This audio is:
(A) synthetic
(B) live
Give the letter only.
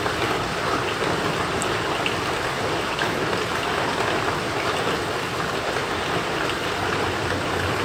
B